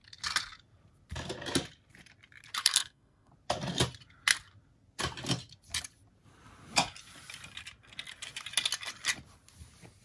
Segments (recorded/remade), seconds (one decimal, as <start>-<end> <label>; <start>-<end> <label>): 0.0-2.6 recorded; 2.6-3.3 remade; 3.3-10.0 recorded